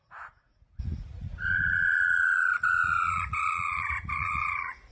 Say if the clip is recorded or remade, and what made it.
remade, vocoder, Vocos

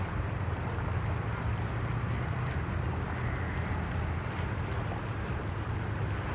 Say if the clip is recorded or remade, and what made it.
recorded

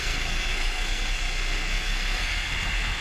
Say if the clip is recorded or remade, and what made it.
remade, codec, SNAC